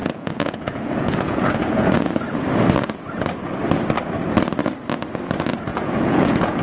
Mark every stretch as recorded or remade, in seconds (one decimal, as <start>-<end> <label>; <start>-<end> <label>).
0.0-2.1 remade; 2.1-5.7 recorded; 5.7-6.6 remade